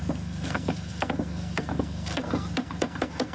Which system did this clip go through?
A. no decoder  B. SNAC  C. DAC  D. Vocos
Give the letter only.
B